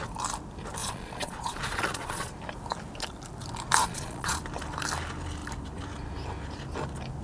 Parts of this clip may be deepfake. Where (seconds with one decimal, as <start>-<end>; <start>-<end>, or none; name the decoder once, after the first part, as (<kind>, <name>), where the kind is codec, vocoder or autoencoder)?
0.8-2.3 (vocoder, Vocos); 3.8-4.4